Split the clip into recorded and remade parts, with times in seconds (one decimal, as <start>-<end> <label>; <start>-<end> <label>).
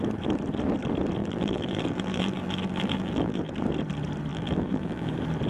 0.0-1.2 recorded; 1.2-3.5 remade; 3.5-4.3 recorded; 4.3-5.1 remade; 5.1-5.5 recorded